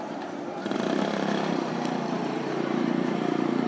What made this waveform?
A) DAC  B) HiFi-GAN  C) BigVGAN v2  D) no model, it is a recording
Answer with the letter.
C